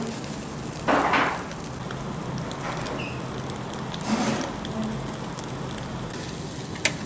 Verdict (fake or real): real